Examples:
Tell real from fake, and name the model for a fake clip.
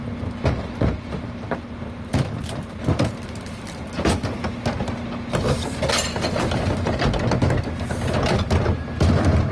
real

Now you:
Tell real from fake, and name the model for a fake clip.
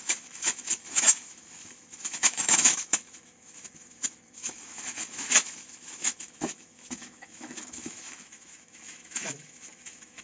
fake, autoencoder, DAC-VAE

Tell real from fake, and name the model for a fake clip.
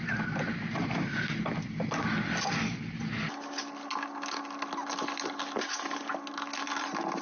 real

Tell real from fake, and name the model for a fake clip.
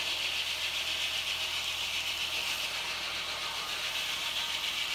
real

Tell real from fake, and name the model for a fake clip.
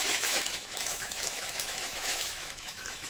fake, autoencoder, DAC-VAE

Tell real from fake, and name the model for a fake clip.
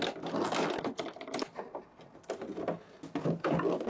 real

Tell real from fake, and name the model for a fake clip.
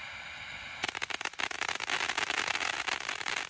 real